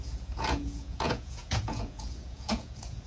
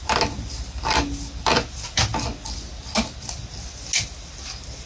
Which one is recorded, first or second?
second